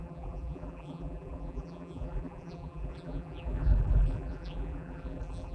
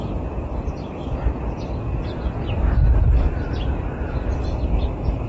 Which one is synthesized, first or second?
first